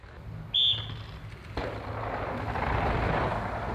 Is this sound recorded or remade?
recorded